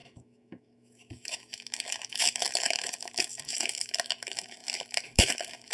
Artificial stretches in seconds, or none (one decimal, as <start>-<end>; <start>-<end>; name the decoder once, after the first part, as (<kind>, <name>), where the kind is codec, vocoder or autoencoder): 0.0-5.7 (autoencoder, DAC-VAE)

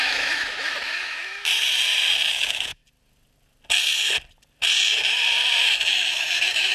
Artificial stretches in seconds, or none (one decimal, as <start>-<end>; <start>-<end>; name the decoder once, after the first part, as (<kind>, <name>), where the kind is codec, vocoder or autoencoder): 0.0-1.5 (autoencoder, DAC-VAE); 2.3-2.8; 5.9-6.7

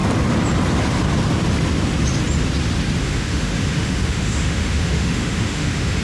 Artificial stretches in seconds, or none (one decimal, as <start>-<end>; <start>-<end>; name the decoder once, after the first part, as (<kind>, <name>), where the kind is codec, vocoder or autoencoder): 3.0-6.0 (autoencoder, DAC-VAE)